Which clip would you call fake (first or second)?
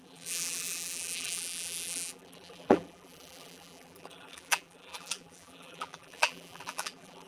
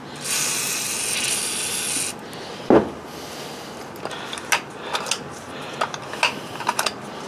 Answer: first